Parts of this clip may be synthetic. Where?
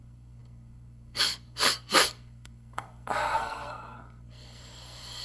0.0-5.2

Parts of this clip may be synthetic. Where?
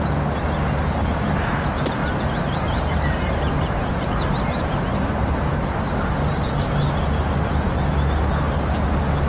2.0-5.7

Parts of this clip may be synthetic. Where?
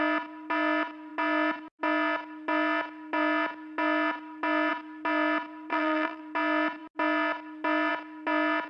5.7-6.2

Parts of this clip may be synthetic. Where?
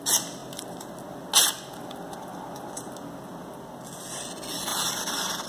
4.7-5.5